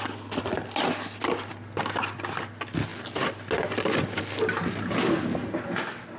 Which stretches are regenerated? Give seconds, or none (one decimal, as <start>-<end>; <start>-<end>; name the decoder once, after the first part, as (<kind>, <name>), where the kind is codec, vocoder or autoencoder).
none